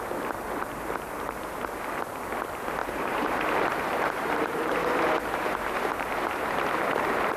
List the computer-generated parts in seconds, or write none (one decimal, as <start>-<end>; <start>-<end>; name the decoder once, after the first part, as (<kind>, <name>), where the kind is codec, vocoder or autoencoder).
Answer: 2.8-6.6 (vocoder, BigVGAN v2)